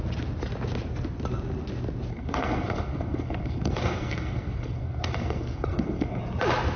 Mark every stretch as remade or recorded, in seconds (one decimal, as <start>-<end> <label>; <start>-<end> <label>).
0.0-2.1 recorded; 2.1-6.2 remade; 6.2-6.8 recorded